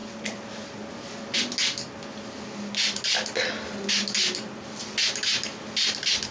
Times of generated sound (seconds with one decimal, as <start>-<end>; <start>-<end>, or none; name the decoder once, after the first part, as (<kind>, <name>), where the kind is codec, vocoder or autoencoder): none